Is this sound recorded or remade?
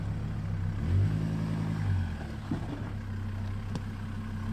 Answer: recorded